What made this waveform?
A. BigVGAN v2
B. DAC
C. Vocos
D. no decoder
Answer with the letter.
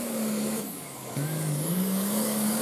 B